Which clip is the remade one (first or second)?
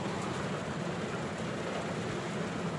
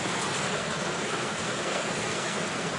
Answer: second